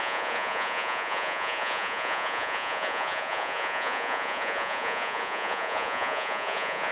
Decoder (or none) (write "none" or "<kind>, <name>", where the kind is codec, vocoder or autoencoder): vocoder, Vocos